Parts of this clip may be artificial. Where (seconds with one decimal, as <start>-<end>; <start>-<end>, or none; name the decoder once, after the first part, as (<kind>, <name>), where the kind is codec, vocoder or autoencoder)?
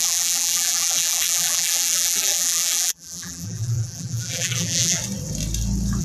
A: 0.0-5.0 (vocoder, BigVGAN v2)